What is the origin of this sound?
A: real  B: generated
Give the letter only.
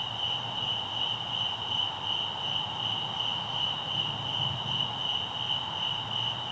A